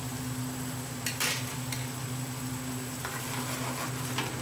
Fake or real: real